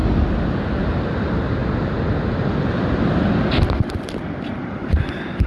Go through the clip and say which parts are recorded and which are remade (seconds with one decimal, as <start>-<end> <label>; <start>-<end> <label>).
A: 0.0-0.8 recorded; 0.8-1.6 remade; 1.6-4.6 recorded; 4.6-5.5 remade